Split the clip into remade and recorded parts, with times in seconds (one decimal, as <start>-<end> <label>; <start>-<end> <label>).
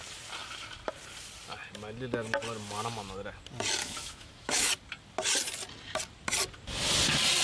0.0-3.8 recorded; 3.8-4.7 remade; 4.7-7.4 recorded